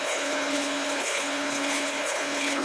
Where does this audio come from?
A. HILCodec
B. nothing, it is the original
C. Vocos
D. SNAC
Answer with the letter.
A